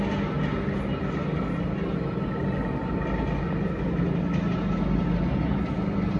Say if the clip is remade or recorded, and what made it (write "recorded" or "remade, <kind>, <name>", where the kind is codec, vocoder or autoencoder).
recorded